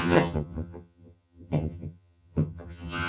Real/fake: fake